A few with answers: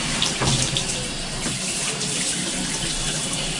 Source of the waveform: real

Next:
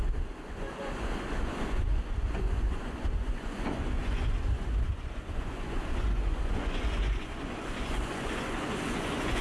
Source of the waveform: fake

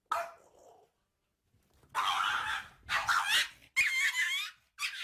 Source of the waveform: real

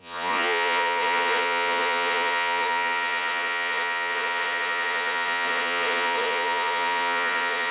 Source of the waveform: fake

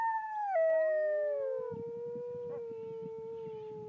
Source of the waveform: real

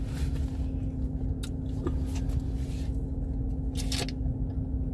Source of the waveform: real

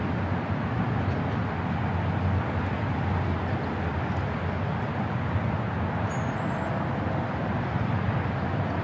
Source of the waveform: real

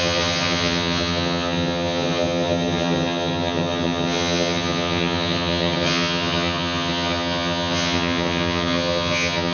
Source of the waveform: fake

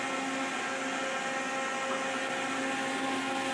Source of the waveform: real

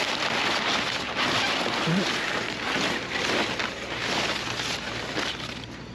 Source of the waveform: real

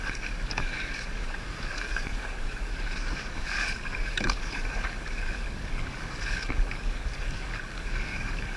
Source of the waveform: fake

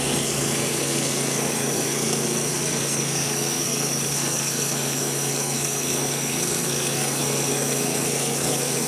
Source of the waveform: fake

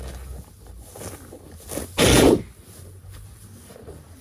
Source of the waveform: real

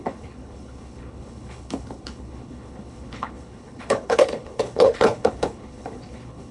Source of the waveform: fake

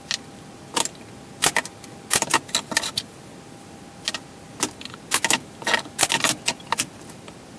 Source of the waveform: real